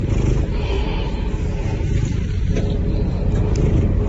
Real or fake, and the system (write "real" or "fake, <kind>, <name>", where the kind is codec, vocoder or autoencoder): real